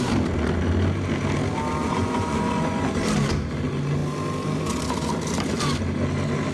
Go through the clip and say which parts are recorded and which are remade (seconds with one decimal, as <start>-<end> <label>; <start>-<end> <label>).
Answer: 0.0-1.8 recorded; 1.8-2.8 remade; 2.8-6.5 recorded